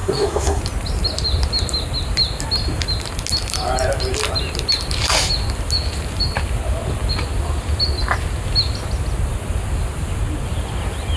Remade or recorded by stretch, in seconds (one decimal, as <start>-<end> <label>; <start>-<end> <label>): 0.0-0.6 remade; 0.6-11.2 recorded